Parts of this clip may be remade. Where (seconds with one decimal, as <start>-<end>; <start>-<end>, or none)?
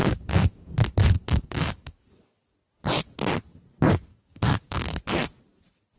0.0-0.7; 1.2-2.2; 4.1-5.0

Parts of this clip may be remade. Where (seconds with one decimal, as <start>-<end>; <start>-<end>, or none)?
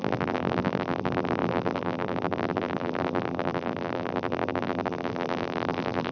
0.0-6.1